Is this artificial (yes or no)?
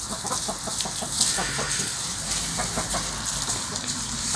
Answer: no